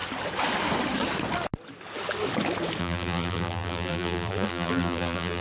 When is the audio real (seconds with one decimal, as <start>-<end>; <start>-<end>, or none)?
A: 0.0-2.8